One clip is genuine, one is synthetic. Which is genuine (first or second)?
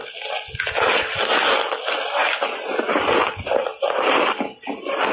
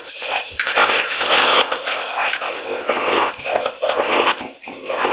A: first